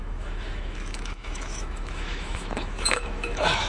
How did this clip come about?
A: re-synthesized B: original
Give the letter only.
A